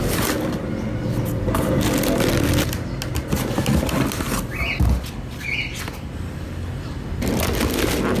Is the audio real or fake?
real